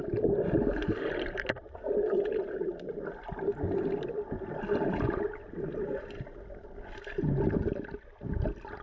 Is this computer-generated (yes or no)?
no